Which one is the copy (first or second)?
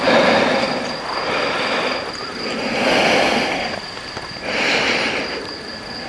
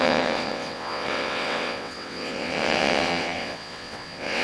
second